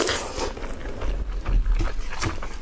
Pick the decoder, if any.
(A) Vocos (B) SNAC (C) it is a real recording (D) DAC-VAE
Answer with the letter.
C